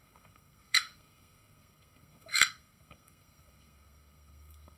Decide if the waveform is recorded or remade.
remade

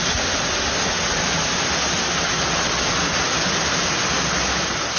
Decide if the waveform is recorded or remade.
recorded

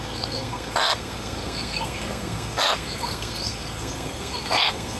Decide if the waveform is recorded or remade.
remade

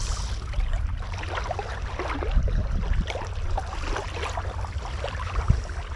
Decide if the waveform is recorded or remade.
recorded